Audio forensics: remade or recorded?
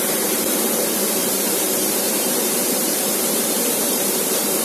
remade